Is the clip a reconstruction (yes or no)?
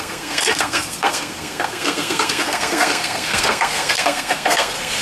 yes